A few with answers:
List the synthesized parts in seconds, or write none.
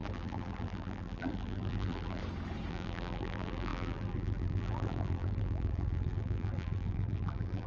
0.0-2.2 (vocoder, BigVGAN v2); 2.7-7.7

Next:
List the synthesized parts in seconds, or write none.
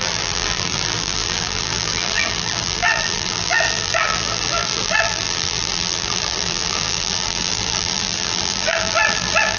0.0-9.6 (vocoder, BigVGAN v2)